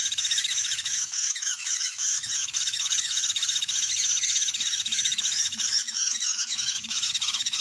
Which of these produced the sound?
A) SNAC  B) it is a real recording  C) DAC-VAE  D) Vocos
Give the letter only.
C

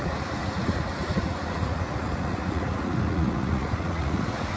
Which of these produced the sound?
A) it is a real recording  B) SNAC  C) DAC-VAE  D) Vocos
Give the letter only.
D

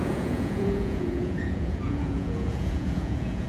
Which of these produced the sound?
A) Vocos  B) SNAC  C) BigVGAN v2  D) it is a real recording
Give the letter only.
A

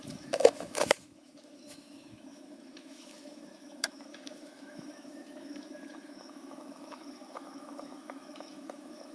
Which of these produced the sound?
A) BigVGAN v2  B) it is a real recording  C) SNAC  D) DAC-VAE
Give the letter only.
D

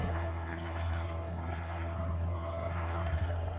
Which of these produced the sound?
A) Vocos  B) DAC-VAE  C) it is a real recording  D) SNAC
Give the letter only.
D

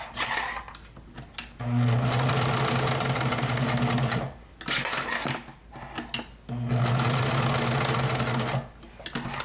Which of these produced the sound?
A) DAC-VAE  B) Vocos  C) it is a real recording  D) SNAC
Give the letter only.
C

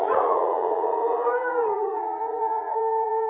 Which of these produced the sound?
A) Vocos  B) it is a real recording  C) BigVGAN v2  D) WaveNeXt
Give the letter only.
A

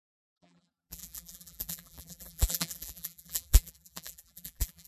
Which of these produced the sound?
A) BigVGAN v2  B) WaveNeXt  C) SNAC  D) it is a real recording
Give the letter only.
A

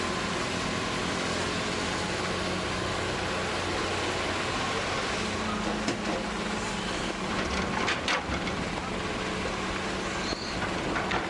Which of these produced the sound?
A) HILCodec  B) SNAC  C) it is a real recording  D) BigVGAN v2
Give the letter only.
C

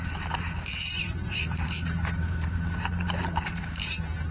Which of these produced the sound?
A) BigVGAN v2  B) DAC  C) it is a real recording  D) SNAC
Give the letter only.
A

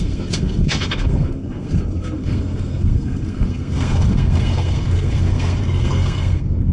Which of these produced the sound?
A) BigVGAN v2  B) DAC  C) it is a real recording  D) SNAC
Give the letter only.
D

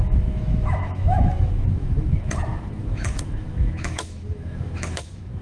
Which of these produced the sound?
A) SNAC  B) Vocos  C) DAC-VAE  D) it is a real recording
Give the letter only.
C